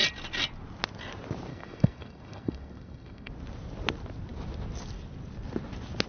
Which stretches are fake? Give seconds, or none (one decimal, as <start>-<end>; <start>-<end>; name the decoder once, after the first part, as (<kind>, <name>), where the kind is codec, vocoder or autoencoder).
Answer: 1.5-3.3 (codec, SNAC)

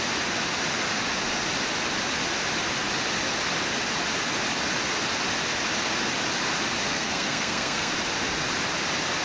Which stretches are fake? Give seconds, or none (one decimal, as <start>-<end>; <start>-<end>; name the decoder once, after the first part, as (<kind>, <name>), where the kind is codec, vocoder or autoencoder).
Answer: 6.9-7.9 (codec, SNAC)

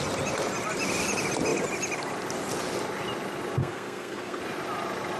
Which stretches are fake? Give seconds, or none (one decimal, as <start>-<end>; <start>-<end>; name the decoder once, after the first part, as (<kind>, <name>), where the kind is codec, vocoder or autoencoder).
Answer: 3.6-4.4 (codec, SNAC)

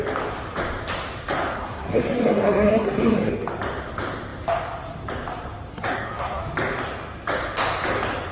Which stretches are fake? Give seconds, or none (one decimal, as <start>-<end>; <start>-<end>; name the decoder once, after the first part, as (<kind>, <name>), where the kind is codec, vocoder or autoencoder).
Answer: 1.5-3.3 (codec, SNAC); 5.7-6.4

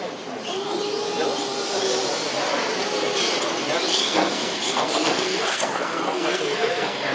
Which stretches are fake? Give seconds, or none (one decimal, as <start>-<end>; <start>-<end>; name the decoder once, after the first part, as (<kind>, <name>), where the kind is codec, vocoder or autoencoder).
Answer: 3.9-7.1 (codec, SNAC)

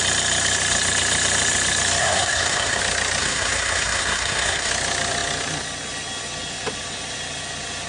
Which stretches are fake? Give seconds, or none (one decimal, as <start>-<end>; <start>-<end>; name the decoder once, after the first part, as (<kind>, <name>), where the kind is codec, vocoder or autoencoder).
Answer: 2.0-2.8 (codec, SNAC); 3.2-4.7

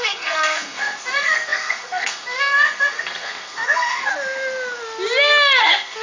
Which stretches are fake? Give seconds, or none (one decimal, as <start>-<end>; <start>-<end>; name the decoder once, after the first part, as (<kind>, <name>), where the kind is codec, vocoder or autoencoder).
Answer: 0.0-4.1 (codec, SNAC); 5.6-6.0

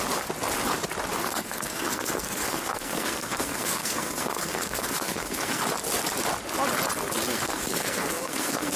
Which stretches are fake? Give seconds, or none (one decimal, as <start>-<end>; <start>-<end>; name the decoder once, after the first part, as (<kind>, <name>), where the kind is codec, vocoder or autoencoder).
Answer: 1.2-5.6 (codec, SNAC); 7.3-8.8